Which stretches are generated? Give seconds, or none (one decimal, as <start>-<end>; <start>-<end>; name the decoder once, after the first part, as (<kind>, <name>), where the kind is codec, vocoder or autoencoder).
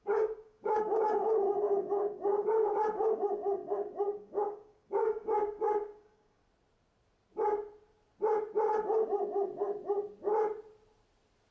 0.0-6.4 (codec, DAC)